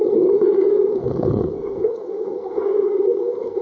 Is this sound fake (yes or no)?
yes